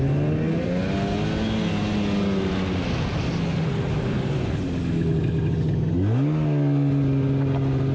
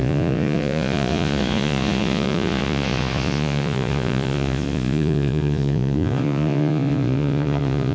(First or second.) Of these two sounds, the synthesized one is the second